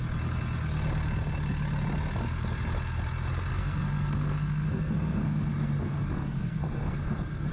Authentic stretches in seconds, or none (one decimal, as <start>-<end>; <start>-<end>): 0.0-3.5